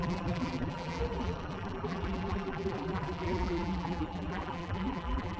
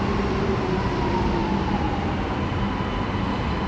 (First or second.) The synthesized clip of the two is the first